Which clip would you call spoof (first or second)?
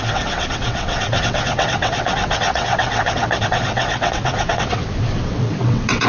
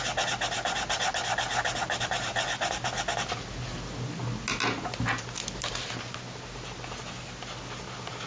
first